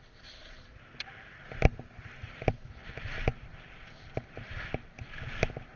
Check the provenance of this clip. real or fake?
real